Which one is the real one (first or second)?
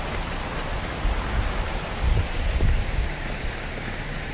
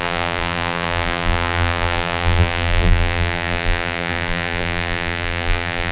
first